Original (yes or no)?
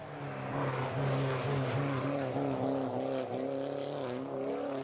yes